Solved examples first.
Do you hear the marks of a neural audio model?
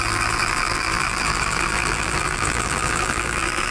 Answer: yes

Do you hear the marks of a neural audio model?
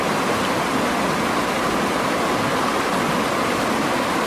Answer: no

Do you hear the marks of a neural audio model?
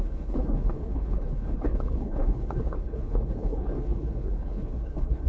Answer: yes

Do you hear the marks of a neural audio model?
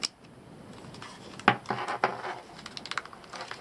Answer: no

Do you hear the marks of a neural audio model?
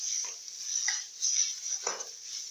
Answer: no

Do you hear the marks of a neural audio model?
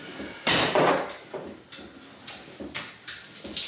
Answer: no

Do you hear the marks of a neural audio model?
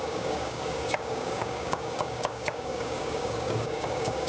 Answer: yes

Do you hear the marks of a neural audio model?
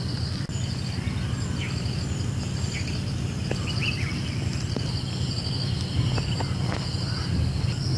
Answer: no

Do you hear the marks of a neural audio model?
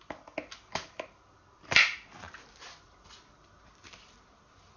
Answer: no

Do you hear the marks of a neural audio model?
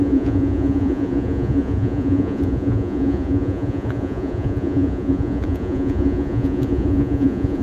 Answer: yes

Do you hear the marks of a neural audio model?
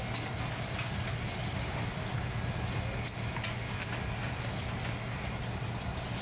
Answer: no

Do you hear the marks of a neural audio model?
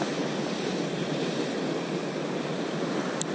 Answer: no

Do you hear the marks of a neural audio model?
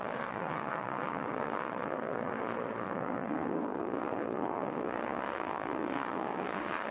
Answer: yes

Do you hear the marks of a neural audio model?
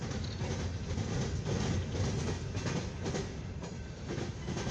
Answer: no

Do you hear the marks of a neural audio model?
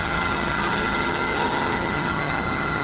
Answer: yes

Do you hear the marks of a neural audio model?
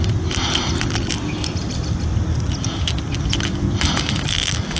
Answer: no